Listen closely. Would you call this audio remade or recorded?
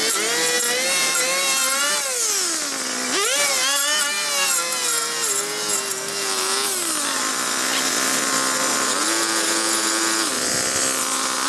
recorded